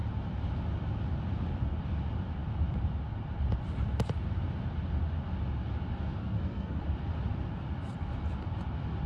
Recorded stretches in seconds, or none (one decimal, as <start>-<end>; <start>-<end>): 0.0-6.2; 6.8-9.1